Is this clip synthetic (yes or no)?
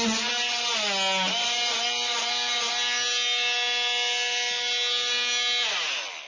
no